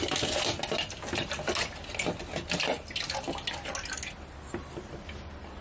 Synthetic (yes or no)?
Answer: no